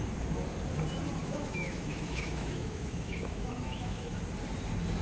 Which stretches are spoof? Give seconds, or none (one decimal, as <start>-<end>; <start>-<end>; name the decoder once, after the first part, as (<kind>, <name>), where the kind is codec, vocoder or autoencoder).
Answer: 1.2-4.2 (autoencoder, DAC-VAE)